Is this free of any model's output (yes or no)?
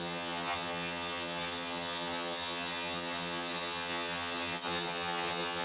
no